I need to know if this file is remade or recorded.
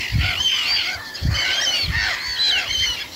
recorded